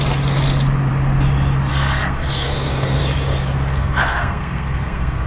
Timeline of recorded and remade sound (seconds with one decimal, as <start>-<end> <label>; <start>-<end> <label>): 0.0-1.7 recorded; 1.7-3.0 remade; 3.0-3.7 recorded; 3.7-5.3 remade